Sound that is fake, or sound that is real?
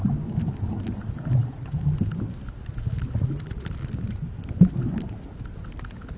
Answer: real